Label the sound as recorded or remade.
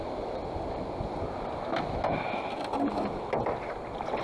recorded